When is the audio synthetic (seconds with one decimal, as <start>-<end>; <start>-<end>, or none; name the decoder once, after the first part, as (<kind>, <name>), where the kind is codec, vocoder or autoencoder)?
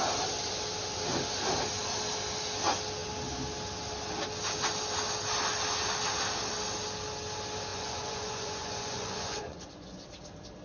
7.7-10.0 (vocoder, Vocos)